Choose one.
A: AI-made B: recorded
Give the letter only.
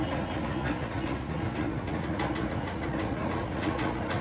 A